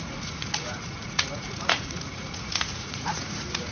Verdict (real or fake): fake